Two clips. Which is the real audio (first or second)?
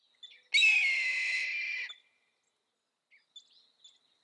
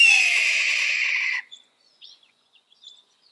first